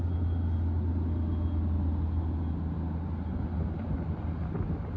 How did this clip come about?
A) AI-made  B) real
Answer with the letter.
B